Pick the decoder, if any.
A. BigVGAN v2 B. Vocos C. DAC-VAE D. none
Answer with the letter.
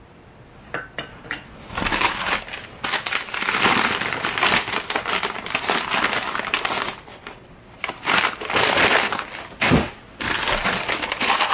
D